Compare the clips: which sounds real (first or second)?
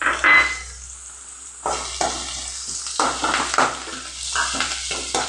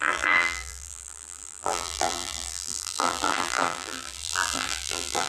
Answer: first